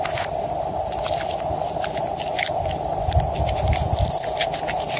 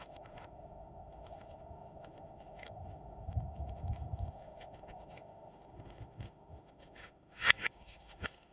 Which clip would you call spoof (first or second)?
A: second